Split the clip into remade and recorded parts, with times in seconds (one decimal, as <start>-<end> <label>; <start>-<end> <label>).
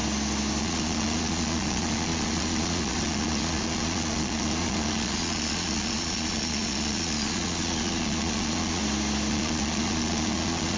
0.0-0.6 recorded; 0.6-8.8 remade; 8.8-9.3 recorded; 9.3-10.8 remade